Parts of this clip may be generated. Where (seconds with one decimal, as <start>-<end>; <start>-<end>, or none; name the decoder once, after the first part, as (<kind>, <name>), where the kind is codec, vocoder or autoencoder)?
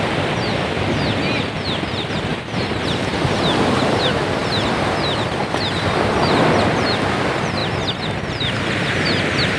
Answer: 2.3-4.0 (vocoder, BigVGAN v2)